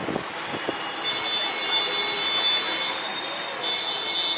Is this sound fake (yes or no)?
no